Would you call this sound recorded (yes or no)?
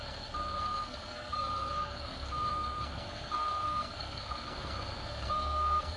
no